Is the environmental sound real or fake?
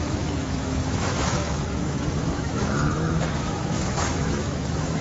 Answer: fake